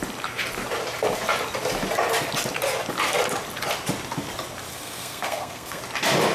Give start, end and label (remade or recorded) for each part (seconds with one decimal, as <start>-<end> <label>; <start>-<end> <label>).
0.0-4.7 recorded; 4.7-5.8 remade; 5.8-6.3 recorded